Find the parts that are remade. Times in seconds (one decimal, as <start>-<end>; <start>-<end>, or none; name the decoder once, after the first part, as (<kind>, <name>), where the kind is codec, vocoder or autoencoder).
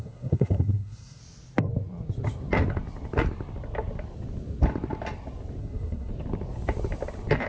0.0-1.2 (codec, SNAC); 5.6-6.1